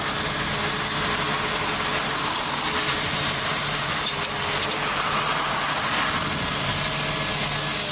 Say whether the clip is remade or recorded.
recorded